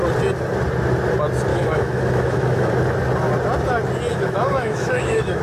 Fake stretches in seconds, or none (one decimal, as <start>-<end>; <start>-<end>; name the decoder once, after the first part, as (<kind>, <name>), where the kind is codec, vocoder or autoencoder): 1.5-2.7 (autoencoder, DAC-VAE); 4.1-5.4